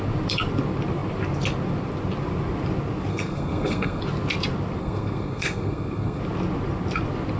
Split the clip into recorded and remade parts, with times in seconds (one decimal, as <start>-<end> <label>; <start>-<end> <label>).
0.0-3.1 recorded; 3.1-4.0 remade; 4.0-4.8 recorded; 4.8-6.2 remade; 6.2-7.4 recorded